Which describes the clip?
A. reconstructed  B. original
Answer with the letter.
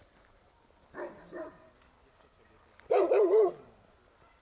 B